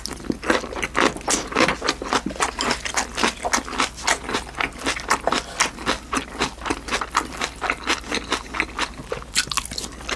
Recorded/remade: recorded